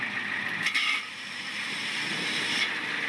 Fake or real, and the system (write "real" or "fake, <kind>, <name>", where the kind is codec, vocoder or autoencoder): real